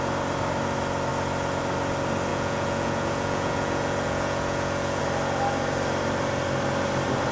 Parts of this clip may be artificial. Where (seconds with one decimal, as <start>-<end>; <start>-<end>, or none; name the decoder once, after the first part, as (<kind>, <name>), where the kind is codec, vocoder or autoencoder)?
2.3-5.0 (vocoder, Vocos)